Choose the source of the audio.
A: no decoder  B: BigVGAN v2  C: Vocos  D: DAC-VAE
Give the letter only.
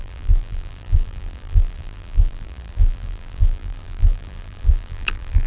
B